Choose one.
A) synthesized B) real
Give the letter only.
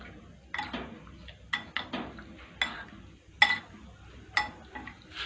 B